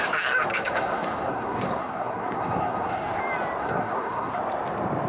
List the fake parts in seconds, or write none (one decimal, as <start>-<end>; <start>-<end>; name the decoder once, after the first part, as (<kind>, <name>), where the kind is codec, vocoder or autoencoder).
0.5-3.2 (codec, SNAC); 3.6-4.4